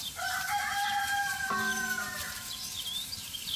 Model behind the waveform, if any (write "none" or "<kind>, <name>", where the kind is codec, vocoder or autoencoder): vocoder, BigVGAN v2